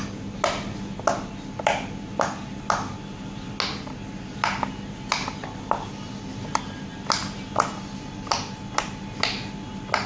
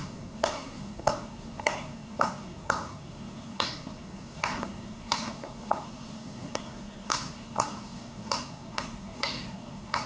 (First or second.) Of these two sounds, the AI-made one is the second